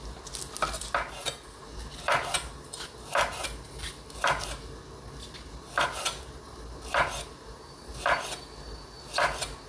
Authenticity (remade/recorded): recorded